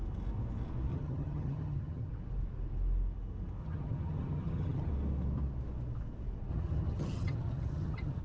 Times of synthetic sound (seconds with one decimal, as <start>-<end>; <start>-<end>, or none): 0.9-2.1; 3.6-4.9; 6.5-8.2